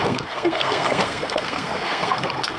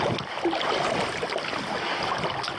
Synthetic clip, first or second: first